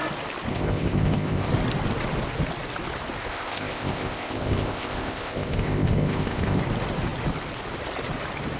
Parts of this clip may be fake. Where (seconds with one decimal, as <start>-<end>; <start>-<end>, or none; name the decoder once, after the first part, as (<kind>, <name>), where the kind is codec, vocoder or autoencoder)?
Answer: 0.5-1.5 (codec, ZipCodec); 3.2-6.6